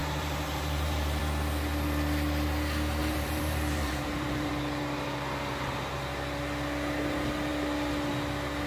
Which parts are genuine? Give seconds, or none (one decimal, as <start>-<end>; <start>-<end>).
1.2-3.0; 4.5-8.7